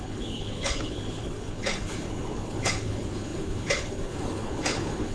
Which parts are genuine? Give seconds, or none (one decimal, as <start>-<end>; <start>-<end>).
none